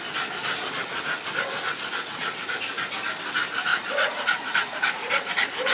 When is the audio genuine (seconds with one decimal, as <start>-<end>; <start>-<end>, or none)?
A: 0.0-3.7; 5.2-5.7